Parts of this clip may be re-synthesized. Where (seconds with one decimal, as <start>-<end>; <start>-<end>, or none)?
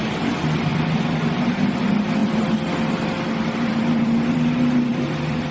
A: 0.7-1.4; 2.2-5.5